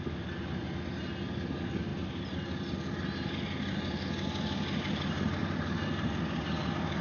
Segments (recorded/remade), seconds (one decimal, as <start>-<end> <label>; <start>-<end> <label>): 0.0-5.4 recorded; 5.4-6.6 remade; 6.6-7.0 recorded